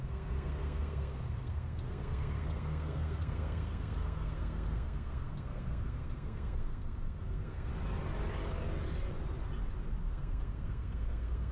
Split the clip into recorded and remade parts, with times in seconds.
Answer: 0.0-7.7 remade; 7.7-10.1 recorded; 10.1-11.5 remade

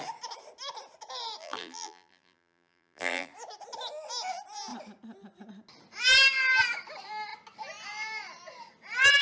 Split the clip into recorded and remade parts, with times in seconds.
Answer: 0.0-1.4 recorded; 1.4-3.3 remade; 3.3-9.2 recorded

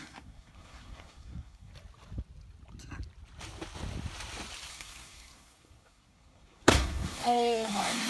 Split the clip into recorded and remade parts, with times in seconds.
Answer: 0.0-1.7 remade; 1.7-4.7 recorded; 4.7-8.1 remade